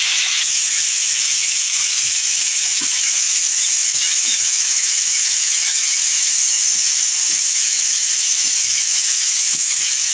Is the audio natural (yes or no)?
no